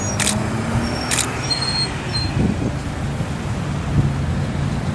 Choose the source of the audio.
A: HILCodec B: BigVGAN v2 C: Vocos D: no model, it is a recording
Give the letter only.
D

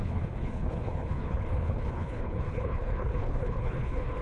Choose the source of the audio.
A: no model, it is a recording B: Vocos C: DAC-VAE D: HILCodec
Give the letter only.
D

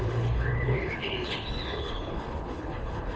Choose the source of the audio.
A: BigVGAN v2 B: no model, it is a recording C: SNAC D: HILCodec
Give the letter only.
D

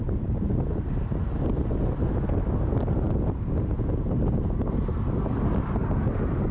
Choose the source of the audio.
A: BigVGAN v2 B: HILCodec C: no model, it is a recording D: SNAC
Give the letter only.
C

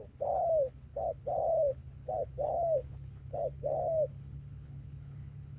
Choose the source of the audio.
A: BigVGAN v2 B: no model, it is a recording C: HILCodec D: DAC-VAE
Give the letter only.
C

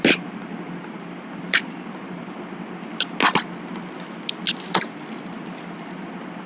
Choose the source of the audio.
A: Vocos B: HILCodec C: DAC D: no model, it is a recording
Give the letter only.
D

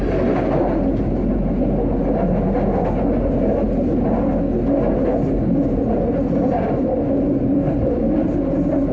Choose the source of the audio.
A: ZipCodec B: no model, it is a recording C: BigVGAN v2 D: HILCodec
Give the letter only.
B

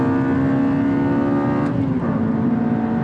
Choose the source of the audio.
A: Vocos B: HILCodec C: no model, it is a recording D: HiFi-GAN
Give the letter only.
C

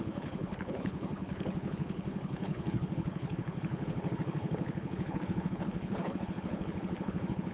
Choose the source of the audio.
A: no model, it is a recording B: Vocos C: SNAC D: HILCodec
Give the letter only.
D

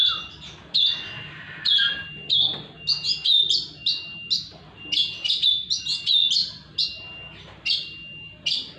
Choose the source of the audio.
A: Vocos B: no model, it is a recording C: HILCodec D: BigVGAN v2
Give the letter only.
B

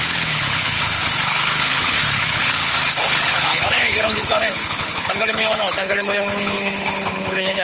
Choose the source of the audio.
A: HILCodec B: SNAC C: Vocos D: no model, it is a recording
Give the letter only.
A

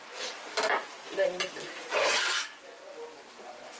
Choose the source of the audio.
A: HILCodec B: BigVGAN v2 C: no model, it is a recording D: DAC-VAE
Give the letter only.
C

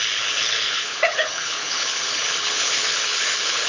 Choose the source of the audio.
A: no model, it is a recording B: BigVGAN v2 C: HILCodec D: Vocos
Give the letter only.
C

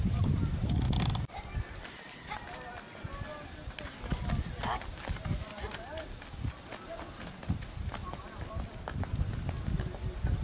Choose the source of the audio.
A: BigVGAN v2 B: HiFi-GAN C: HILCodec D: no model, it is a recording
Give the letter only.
D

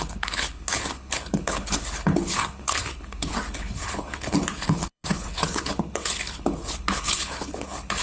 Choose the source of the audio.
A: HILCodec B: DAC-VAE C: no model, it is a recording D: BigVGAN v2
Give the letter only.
A